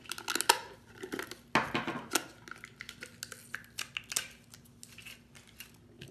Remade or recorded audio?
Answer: recorded